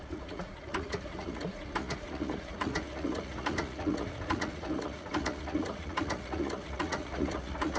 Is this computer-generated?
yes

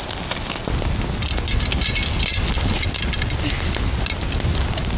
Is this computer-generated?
no